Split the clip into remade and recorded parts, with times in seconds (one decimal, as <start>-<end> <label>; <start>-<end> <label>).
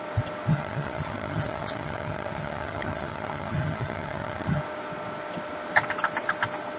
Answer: 0.0-0.5 recorded; 0.5-4.6 remade; 4.6-6.8 recorded